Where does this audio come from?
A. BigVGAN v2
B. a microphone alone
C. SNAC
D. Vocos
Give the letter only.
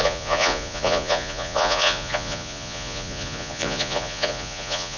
D